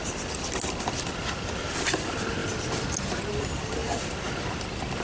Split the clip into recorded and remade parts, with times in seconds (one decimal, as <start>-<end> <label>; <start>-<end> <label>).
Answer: 0.0-2.4 remade; 2.4-3.3 recorded; 3.3-5.0 remade